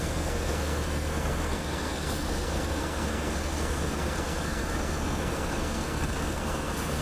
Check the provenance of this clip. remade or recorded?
remade